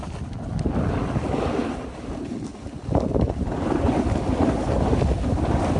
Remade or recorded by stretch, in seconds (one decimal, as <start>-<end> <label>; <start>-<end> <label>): 0.0-5.8 recorded